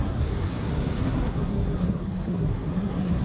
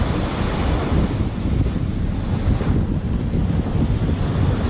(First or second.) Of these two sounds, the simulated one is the first